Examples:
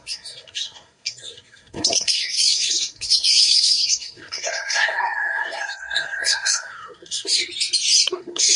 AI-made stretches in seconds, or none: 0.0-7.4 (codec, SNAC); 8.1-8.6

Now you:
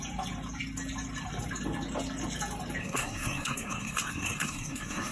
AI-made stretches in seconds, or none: 2.8-5.1 (codec, SNAC)

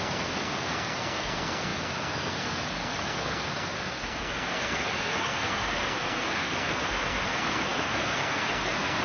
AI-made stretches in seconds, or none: 0.0-9.0 (codec, SNAC)

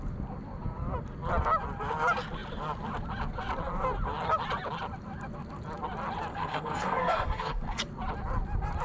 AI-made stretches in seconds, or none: 6.3-7.8 (codec, SNAC)

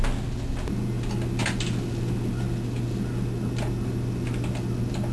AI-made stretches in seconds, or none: none

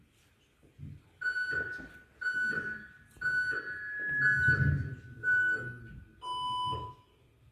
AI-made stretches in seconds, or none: 5.2-5.8 (codec, SNAC)

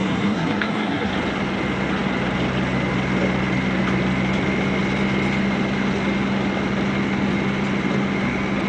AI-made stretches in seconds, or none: 0.0-1.1 (codec, SNAC)